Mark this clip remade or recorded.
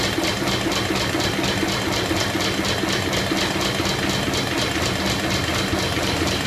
recorded